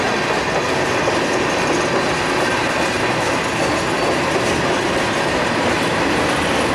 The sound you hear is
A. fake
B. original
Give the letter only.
B